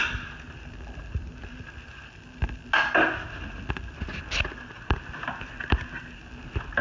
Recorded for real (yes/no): yes